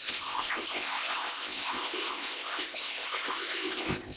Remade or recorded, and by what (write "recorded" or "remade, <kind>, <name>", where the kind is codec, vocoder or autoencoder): remade, codec, ZipCodec